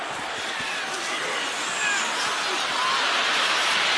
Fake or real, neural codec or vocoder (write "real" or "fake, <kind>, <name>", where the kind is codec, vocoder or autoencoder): real